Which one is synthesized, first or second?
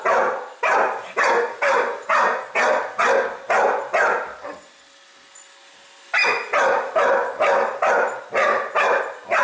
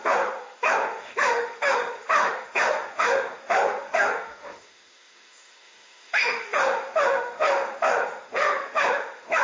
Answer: second